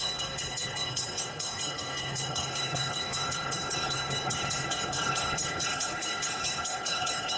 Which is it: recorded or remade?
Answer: remade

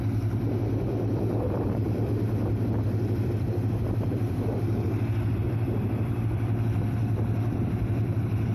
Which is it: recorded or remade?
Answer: remade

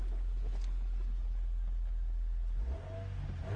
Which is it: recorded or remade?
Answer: recorded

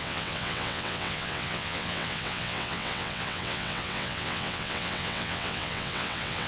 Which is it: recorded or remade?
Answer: remade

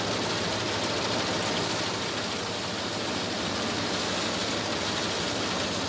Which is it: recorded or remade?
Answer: recorded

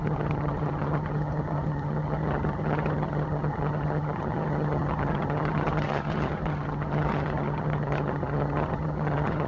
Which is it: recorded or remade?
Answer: remade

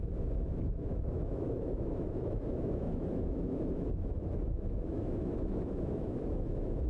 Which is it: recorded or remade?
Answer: remade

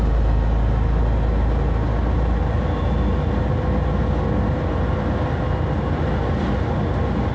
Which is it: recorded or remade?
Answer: recorded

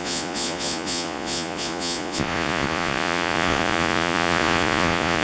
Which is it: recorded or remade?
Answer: remade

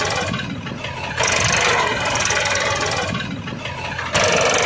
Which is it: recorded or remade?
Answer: recorded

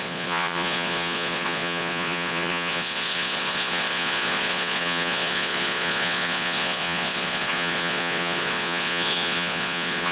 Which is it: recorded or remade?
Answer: remade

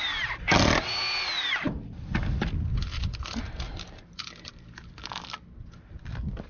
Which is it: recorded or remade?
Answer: recorded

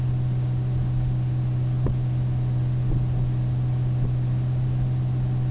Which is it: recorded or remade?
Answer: recorded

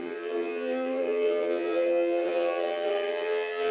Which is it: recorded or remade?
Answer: remade